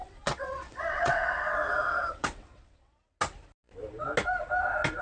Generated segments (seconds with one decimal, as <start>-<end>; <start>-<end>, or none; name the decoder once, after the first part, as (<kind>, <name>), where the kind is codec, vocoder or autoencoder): 0.0-2.9 (vocoder, WaveNeXt)